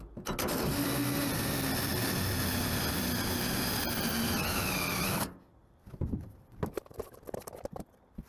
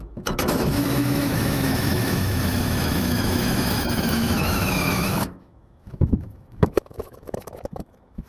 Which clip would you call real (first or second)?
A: first